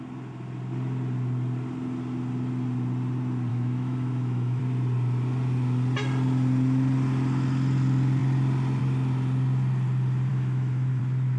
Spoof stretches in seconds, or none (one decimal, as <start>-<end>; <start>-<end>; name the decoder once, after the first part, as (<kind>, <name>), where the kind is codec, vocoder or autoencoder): 3.5-4.6 (autoencoder, DAC-VAE); 10.3-11.0